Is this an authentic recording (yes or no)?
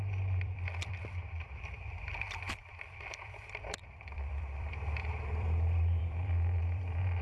no